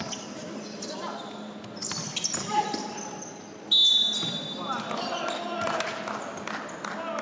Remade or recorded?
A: recorded